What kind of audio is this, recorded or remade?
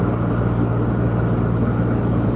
recorded